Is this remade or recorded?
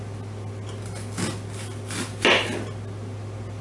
recorded